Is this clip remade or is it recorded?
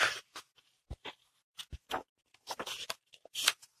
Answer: remade